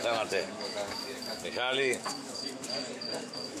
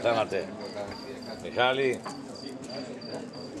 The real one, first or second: second